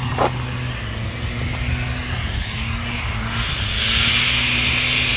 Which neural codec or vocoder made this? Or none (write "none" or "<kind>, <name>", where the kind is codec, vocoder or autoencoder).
none